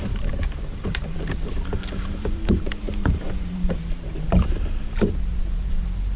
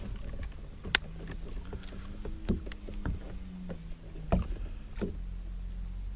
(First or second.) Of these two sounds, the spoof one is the first